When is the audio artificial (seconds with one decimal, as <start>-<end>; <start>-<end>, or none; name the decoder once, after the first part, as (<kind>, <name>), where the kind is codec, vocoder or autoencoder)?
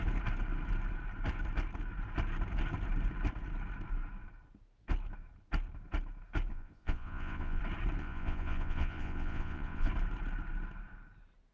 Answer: 6.5-7.6 (vocoder, Vocos); 8.0-9.9